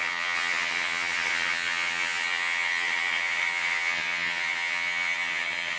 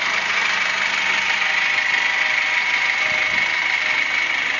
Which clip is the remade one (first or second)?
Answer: first